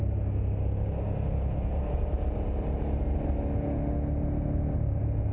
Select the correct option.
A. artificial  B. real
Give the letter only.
B